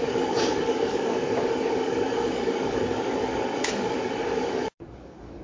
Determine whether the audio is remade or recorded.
remade